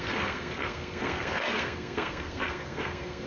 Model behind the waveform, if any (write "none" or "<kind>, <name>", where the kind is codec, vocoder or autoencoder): codec, SNAC